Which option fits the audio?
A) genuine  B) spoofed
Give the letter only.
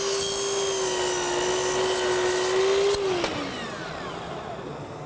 A